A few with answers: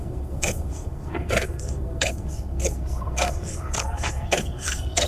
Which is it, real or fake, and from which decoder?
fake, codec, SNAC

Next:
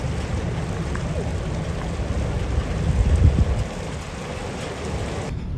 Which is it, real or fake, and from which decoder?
real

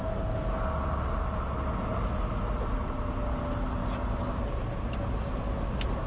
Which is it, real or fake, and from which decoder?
real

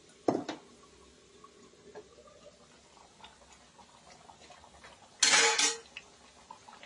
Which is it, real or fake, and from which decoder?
real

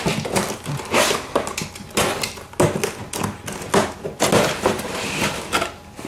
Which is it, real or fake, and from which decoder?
real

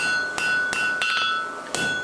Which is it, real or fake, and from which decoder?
real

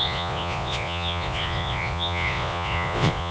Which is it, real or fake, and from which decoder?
fake, vocoder, Vocos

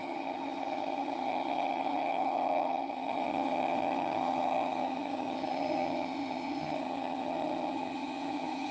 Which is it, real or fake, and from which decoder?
fake, vocoder, HiFi-GAN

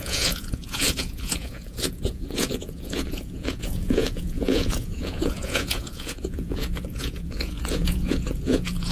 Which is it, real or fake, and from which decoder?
fake, vocoder, Vocos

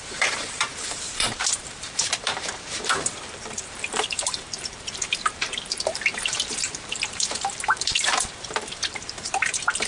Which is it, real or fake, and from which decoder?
fake, vocoder, BigVGAN v2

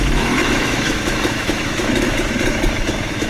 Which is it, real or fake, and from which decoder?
fake, autoencoder, DAC-VAE